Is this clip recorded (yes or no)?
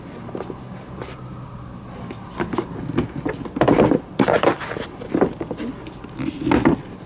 yes